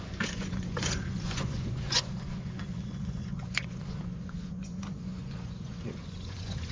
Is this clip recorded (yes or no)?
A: no